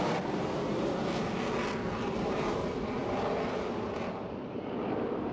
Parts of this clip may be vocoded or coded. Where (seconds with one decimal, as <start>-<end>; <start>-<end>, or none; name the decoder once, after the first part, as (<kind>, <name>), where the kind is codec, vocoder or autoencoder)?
0.0-5.3 (vocoder, BigVGAN v2)